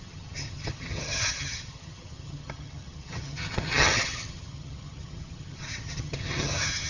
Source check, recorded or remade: remade